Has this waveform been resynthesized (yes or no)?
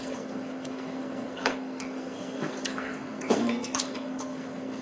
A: yes